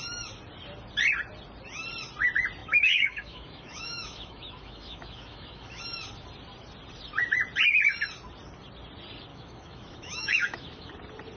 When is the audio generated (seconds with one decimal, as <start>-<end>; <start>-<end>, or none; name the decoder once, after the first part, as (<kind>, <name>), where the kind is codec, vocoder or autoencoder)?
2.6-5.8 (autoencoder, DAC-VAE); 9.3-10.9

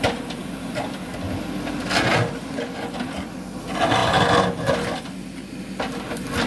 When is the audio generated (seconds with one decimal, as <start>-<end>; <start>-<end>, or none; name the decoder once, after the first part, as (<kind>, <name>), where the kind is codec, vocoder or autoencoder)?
none

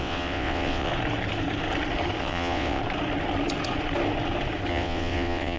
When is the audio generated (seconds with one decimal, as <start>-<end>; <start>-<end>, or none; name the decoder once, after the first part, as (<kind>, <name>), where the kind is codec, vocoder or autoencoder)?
0.0-0.9 (vocoder, WaveNeXt); 2.2-2.8; 4.7-5.6

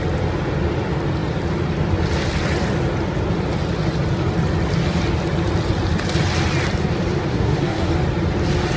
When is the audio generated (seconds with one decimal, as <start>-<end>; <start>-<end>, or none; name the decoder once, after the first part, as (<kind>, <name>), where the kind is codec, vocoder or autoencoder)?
7.3-7.9 (codec, SNAC)

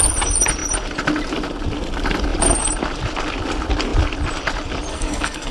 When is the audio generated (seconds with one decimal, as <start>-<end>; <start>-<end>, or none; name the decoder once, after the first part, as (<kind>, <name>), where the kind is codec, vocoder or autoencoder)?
4.9-5.5 (codec, SNAC)

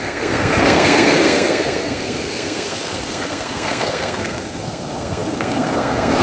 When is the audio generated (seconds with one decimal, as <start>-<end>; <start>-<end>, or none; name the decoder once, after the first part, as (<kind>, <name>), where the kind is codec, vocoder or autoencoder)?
0.0-6.2 (codec, SNAC)

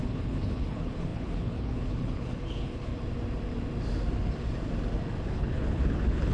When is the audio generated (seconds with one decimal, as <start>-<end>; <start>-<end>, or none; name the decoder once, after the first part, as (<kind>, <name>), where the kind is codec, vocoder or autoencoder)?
0.0-2.9 (codec, HILCodec); 5.3-6.3